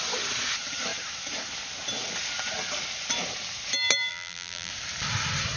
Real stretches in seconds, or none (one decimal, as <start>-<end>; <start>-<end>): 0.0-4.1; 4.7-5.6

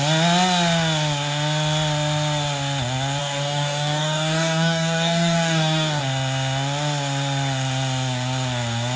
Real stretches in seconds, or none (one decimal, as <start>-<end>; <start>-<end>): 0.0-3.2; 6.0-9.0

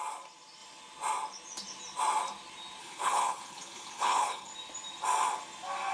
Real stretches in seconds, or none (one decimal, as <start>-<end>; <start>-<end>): 0.0-2.8; 4.5-5.9

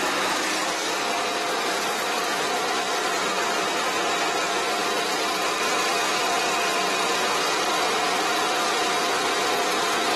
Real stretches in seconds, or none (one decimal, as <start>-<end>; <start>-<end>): 0.0-0.6; 5.6-10.2

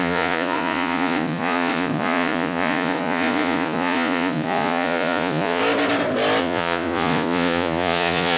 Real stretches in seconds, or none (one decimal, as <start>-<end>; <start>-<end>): 5.6-6.4

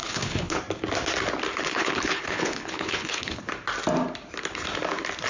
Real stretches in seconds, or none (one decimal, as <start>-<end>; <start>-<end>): 0.6-1.7; 3.5-5.3